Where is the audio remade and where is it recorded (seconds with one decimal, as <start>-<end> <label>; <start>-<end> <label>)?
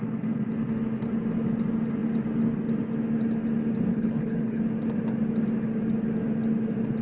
0.0-3.9 recorded; 3.9-4.6 remade; 4.6-7.0 recorded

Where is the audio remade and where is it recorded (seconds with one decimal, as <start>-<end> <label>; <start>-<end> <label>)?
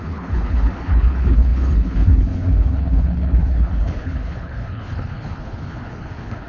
0.0-6.5 remade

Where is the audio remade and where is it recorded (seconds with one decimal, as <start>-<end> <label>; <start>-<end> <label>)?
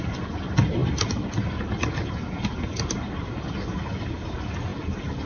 0.0-5.3 recorded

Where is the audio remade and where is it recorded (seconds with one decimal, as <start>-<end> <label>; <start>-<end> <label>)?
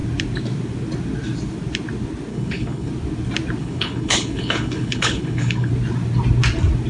0.0-2.3 recorded; 2.3-2.9 remade; 2.9-3.6 recorded; 3.6-5.7 remade; 5.7-6.9 recorded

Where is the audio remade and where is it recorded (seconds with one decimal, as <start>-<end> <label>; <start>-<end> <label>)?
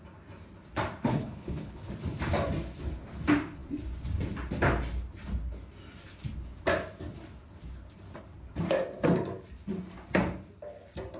0.0-1.1 recorded; 1.1-1.9 remade; 1.9-11.2 recorded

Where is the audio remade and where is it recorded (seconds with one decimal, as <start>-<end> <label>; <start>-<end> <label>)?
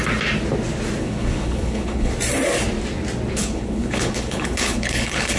0.0-1.0 recorded; 1.0-2.1 remade; 2.1-3.4 recorded; 3.4-5.4 remade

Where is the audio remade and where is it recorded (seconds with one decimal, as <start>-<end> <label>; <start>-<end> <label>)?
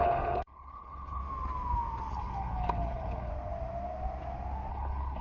0.0-1.2 remade; 1.2-2.1 recorded; 2.1-3.3 remade; 3.3-4.7 recorded; 4.7-5.2 remade